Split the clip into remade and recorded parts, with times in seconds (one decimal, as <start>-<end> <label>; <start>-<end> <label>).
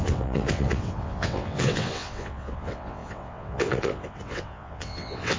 0.0-5.4 remade